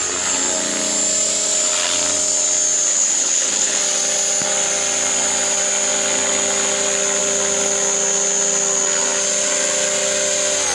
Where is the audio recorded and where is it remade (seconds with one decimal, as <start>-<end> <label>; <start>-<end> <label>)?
0.0-2.9 recorded; 2.9-3.8 remade; 3.8-10.7 recorded